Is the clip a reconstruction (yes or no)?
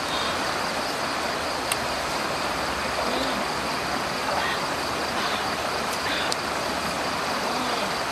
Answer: no